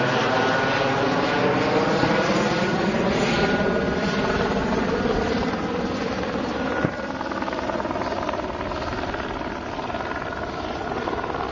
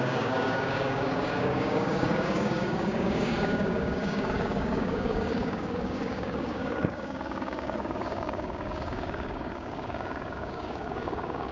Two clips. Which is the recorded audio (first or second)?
first